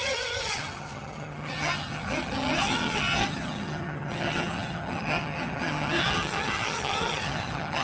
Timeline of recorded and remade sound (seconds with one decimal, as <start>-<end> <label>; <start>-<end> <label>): 0.0-7.8 remade